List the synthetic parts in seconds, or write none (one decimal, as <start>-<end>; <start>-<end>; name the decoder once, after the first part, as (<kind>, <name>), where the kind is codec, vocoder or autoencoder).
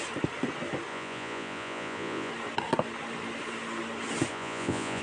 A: 0.9-2.3 (vocoder, Vocos); 4.3-5.0